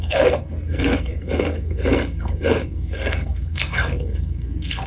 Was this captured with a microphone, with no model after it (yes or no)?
no